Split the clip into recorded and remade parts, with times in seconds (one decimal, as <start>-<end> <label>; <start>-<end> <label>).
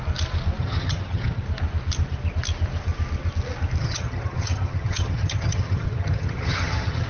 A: 0.0-0.6 recorded; 0.6-1.4 remade; 1.4-3.8 recorded; 3.8-7.1 remade